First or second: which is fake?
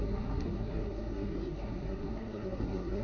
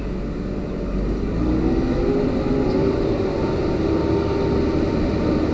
first